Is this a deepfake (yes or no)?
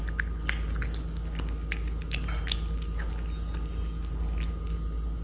no